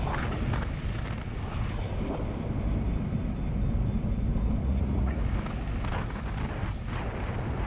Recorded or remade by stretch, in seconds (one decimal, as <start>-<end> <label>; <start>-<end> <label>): 0.0-4.6 recorded; 4.6-5.2 remade; 5.2-7.7 recorded